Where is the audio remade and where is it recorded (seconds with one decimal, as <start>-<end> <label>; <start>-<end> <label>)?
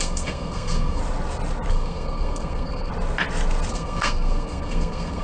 0.0-1.0 remade; 1.0-1.7 recorded; 1.7-2.9 remade; 2.9-3.7 recorded; 3.7-5.2 remade